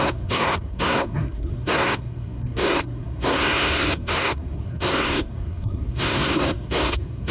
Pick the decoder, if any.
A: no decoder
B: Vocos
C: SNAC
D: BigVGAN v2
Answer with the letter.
C